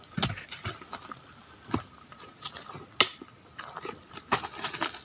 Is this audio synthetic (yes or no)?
no